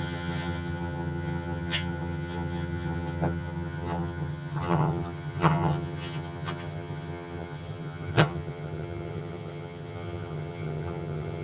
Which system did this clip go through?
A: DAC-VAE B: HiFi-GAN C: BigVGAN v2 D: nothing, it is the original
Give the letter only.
B